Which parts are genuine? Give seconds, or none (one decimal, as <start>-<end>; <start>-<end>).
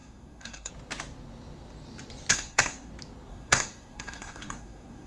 0.7-2.3; 2.9-3.3